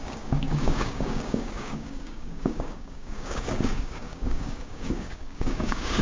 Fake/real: fake